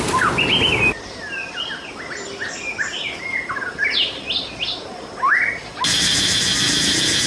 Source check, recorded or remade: recorded